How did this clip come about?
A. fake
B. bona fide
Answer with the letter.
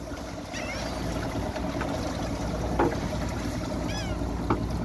B